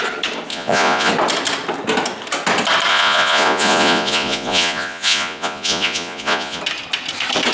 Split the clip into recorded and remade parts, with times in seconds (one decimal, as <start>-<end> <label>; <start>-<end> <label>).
0.0-0.5 recorded; 0.5-1.1 remade; 1.1-2.9 recorded; 2.9-6.6 remade; 6.6-7.5 recorded